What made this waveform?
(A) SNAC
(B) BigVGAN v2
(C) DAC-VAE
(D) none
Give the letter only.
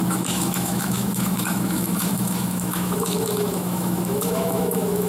C